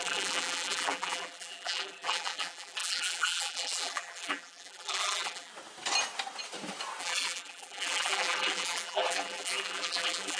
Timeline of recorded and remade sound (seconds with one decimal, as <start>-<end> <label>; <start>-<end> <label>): 0.0-5.5 remade; 5.5-7.0 recorded; 7.0-10.4 remade

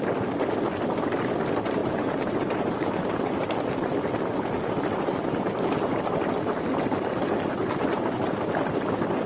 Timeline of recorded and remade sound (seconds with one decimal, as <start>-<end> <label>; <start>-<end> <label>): 0.0-1.8 recorded; 1.8-6.0 remade; 6.0-7.6 recorded; 7.6-8.3 remade; 8.3-9.3 recorded

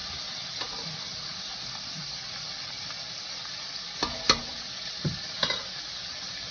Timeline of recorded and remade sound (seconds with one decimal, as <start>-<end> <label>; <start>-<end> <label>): 0.0-4.0 recorded; 4.0-5.7 remade; 5.7-6.5 recorded